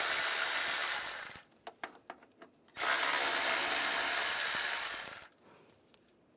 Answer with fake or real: real